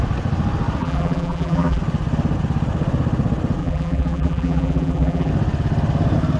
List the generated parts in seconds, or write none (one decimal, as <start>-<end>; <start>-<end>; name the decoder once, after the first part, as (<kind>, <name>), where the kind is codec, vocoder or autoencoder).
0.8-1.8 (vocoder, BigVGAN v2); 3.6-5.3